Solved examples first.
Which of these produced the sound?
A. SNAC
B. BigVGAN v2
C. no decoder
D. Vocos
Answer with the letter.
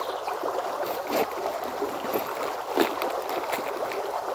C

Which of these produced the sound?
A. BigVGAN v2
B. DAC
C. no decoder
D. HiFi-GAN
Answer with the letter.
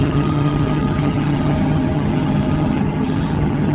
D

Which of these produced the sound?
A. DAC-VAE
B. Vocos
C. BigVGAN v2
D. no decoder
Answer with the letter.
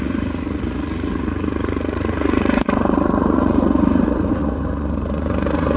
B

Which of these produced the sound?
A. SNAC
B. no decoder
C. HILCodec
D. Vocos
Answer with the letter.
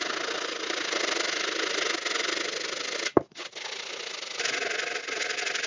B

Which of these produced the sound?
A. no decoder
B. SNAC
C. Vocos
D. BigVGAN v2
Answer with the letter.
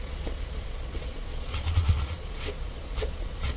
C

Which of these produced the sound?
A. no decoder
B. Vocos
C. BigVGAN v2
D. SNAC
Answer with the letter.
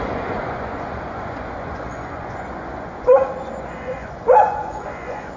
B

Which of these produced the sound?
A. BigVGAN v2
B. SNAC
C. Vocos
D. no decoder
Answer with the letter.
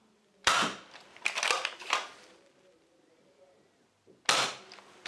D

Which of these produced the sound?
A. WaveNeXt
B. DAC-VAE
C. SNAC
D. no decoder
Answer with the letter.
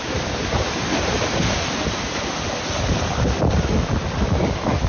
D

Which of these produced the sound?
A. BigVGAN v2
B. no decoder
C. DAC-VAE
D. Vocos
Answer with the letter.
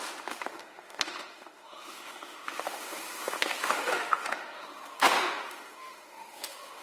C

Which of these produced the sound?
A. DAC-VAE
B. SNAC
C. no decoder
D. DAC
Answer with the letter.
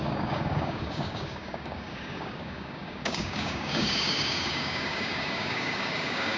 D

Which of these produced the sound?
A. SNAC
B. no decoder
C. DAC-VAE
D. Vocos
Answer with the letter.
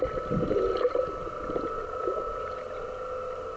B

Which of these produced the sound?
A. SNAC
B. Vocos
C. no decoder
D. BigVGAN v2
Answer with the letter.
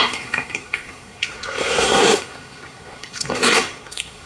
A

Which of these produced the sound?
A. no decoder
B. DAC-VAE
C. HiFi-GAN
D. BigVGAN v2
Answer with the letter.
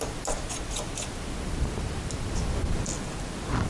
A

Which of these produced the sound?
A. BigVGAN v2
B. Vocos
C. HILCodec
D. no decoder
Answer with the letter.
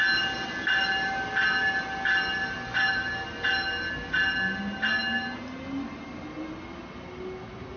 D